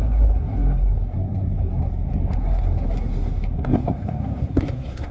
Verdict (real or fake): fake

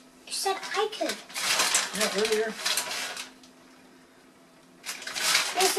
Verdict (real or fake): real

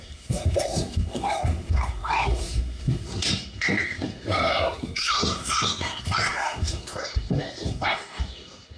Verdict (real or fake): fake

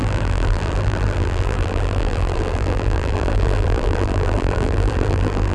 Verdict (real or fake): fake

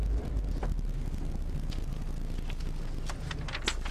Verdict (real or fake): real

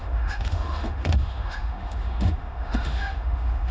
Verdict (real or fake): fake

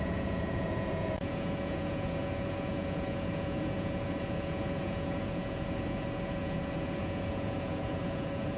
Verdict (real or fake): fake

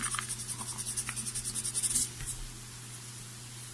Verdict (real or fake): real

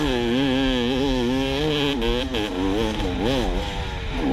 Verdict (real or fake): real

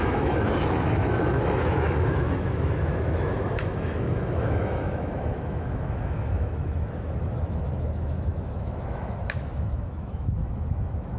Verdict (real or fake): fake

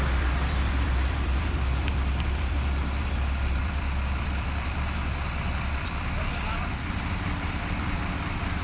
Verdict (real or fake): fake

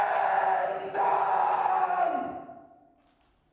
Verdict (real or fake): real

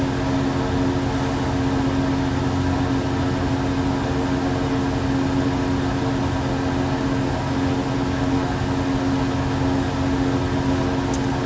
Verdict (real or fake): real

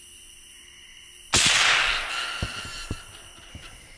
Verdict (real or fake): real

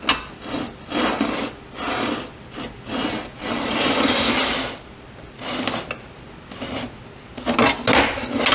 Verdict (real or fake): real